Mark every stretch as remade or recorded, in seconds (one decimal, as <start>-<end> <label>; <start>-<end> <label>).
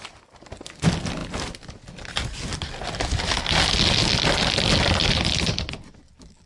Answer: 0.0-6.5 recorded